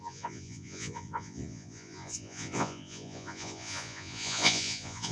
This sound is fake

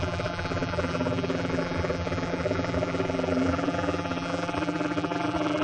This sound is fake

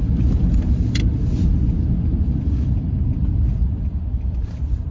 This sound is fake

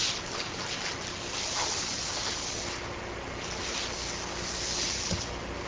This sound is real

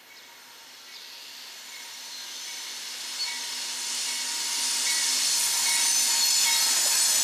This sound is real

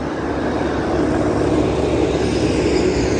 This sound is real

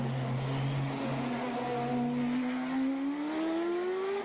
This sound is real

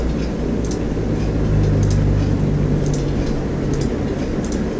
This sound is real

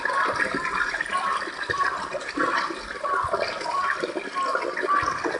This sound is real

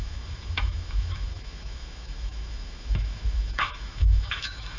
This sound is fake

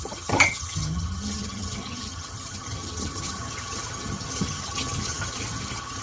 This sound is fake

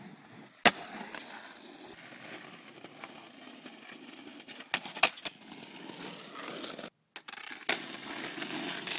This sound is real